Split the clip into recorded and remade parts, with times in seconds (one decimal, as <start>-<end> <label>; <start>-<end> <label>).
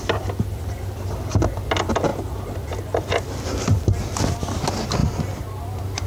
0.0-6.1 recorded